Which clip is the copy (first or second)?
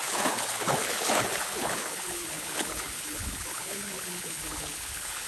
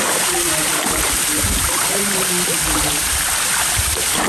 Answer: first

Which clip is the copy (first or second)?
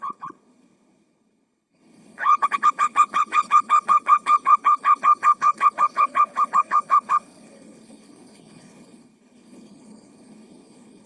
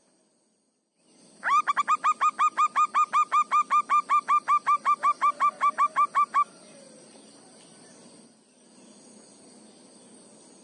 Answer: first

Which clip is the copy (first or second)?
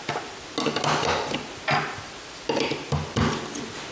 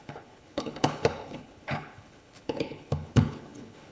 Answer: second